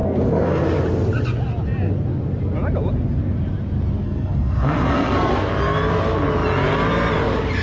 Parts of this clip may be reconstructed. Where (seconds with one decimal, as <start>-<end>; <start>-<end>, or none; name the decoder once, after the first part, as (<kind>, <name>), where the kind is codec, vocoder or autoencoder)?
0.0-0.6 (codec, SNAC); 4.0-5.3